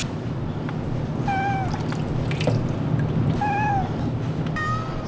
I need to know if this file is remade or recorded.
recorded